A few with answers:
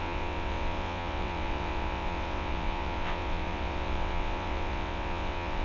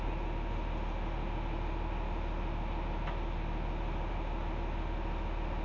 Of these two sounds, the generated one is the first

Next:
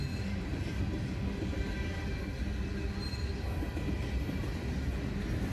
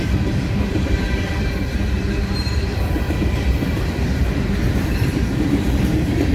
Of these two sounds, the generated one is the second